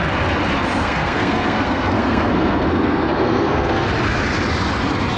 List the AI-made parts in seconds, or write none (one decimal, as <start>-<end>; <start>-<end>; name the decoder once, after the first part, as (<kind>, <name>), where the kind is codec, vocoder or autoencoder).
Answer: 0.8-3.9 (codec, SNAC)